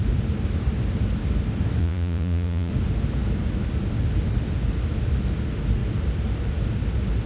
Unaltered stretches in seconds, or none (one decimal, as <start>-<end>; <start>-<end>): 0.0-1.8; 2.7-7.3